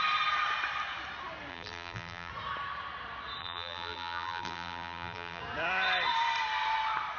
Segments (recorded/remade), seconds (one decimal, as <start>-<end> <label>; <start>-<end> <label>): 0.0-1.5 recorded; 1.5-2.3 remade; 2.3-3.4 recorded; 3.4-5.4 remade; 5.4-7.2 recorded